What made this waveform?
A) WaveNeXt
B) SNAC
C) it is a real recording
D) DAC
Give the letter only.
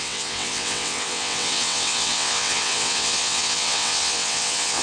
A